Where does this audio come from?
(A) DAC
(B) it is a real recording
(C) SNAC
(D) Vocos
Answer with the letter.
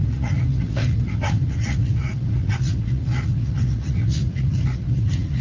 D